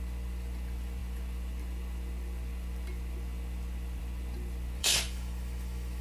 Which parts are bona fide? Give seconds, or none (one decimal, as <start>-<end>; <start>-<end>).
0.0-4.8